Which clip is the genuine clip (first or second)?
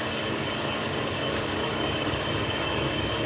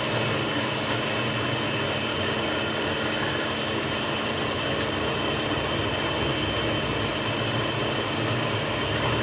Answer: second